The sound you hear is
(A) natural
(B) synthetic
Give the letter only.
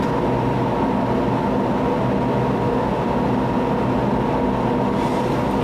A